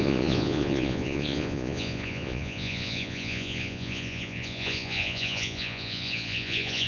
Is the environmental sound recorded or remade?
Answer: remade